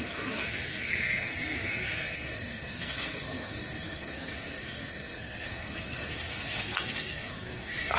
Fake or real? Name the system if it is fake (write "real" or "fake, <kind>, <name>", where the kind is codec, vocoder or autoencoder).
fake, codec, SNAC